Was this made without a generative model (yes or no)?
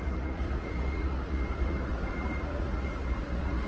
no